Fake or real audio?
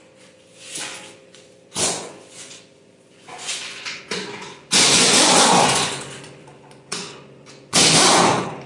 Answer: fake